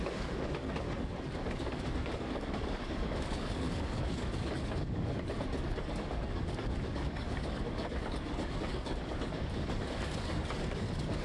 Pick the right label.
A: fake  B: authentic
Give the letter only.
A